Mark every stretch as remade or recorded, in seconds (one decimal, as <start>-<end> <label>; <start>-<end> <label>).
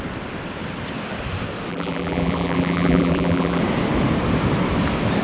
0.0-1.7 recorded; 1.7-3.6 remade; 3.6-5.2 recorded